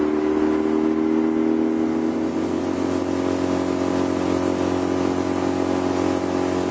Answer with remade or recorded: recorded